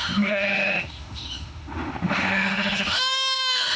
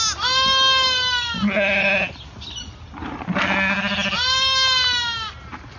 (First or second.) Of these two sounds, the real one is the second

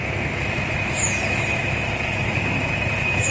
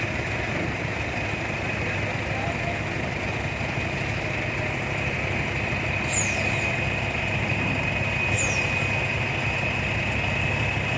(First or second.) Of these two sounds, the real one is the second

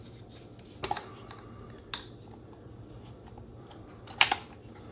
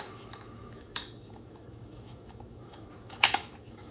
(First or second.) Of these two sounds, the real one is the first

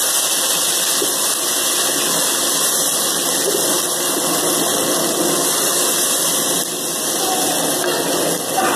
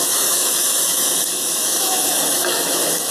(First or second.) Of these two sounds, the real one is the first